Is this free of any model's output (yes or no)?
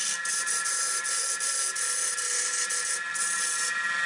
yes